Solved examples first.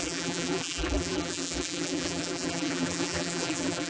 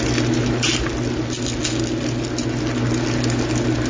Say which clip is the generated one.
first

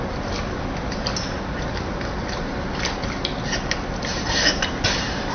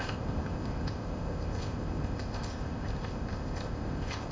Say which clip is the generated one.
second